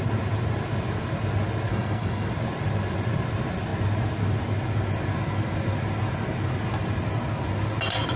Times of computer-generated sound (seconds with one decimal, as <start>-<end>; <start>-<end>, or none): 1.7-2.3